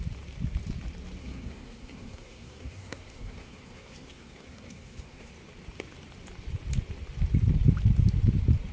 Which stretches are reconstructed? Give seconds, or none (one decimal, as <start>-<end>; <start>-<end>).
1.2-5.3